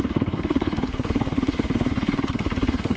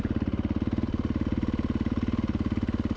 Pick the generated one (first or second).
first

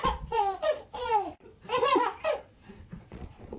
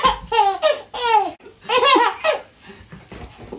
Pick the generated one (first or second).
first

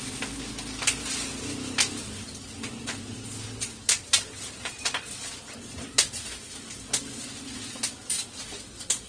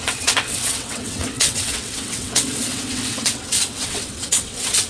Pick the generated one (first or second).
second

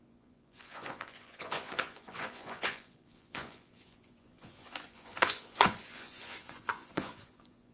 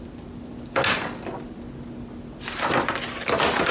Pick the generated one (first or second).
first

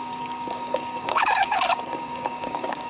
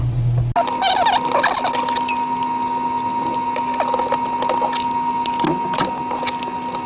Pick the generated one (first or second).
first